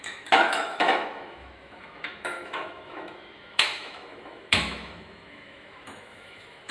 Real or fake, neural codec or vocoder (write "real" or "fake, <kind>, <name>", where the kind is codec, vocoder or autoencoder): fake, autoencoder, DAC-VAE